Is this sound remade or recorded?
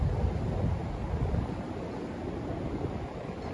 recorded